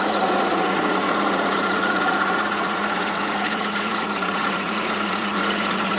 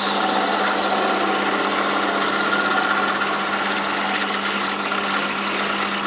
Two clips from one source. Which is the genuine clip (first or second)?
second